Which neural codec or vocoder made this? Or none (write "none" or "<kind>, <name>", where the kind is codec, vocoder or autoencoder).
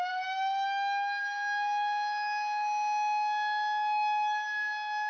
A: none